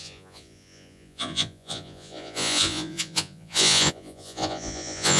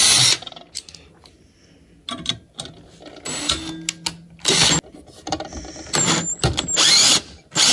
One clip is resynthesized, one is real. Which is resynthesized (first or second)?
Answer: first